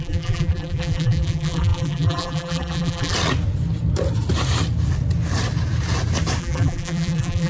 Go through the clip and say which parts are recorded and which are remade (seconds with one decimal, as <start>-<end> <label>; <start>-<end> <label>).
0.0-3.1 remade; 3.1-6.4 recorded; 6.4-7.5 remade